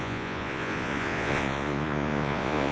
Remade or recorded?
remade